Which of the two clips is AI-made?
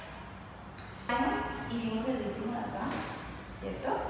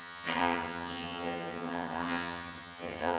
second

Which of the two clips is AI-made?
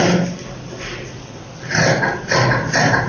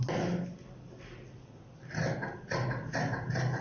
first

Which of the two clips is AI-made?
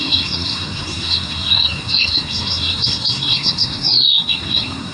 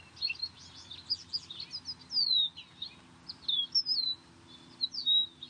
first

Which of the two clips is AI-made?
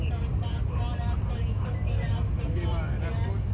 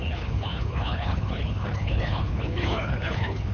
second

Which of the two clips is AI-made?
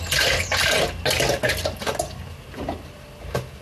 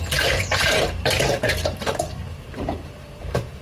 second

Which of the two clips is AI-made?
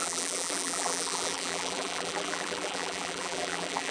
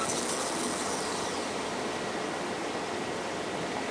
first